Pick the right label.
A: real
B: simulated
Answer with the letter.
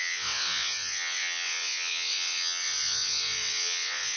B